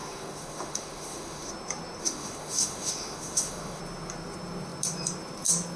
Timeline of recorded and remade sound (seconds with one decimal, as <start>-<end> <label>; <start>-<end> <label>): 0.0-1.5 remade; 1.5-2.0 recorded; 2.0-3.8 remade; 3.8-5.8 recorded